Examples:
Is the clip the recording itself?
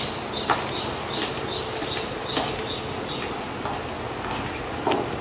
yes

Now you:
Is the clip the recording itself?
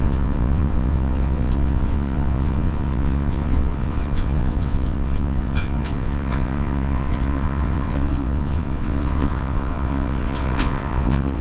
no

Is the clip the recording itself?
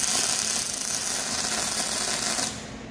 yes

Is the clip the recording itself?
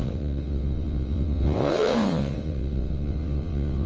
no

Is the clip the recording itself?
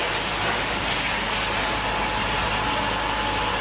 yes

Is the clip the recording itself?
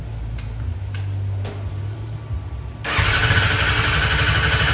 yes